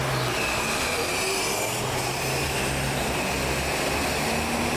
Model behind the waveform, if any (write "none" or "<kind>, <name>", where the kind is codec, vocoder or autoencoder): none